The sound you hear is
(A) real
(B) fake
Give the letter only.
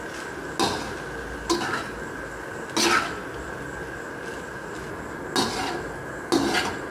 A